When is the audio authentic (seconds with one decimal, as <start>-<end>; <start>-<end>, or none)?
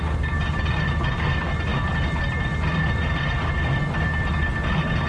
0.0-5.1